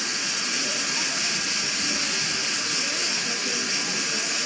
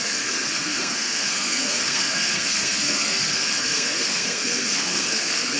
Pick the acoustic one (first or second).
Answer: first